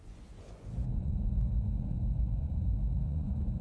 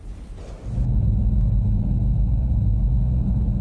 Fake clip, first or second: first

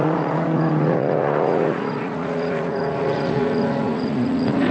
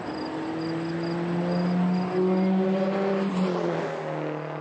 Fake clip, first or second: first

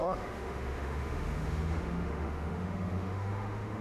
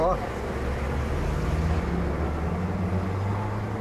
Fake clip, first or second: first